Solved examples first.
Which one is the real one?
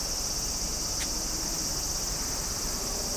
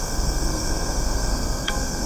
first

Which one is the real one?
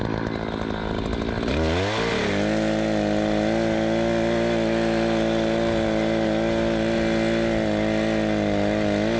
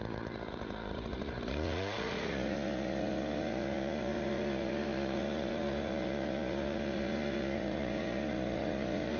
first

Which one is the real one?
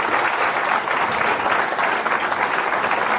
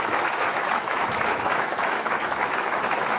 first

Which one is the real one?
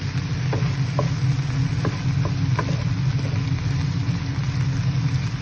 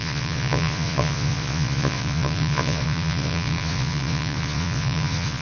first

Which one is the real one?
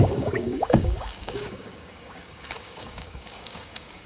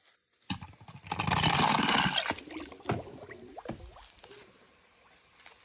second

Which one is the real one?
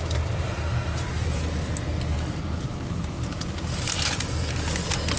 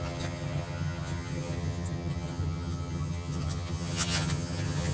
first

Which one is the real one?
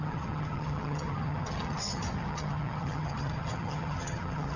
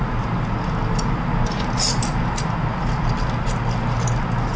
second